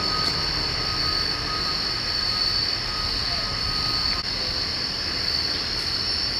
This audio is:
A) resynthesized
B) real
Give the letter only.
B